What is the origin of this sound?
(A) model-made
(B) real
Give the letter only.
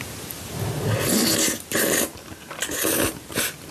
B